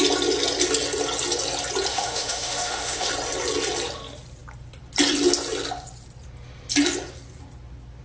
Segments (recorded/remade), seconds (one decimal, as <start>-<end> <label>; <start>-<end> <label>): 0.0-1.9 recorded; 1.9-3.1 remade; 3.1-8.0 recorded